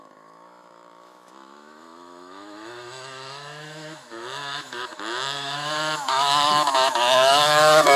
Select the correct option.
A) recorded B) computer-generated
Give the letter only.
B